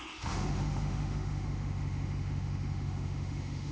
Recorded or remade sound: remade